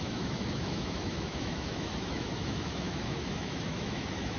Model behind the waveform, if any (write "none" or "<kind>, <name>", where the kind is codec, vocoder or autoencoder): autoencoder, DAC-VAE